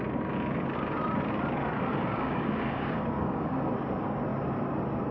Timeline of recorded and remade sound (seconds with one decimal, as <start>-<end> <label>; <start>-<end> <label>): 0.0-1.9 recorded; 1.9-3.7 remade; 3.7-5.1 recorded